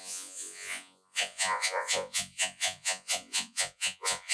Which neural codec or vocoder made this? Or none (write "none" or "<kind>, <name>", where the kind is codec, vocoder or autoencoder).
vocoder, Vocos